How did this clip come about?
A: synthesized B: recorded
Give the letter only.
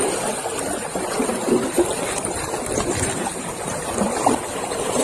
B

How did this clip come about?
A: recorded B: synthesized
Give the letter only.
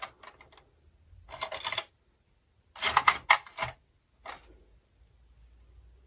A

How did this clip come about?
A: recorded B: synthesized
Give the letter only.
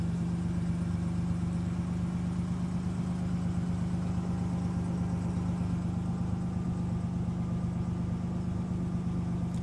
A